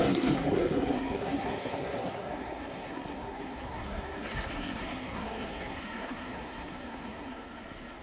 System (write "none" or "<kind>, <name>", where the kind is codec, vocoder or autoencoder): codec, SNAC